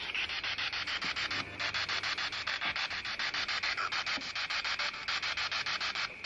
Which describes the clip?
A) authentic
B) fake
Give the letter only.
A